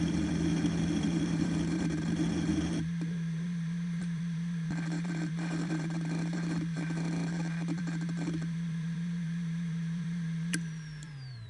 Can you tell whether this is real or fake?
fake